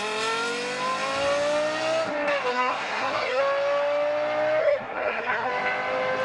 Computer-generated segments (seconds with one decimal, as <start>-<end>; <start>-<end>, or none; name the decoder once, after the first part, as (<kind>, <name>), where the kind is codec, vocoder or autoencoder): 2.5-3.4 (codec, SNAC); 4.6-5.5